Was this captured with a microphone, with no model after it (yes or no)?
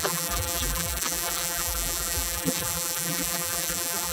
no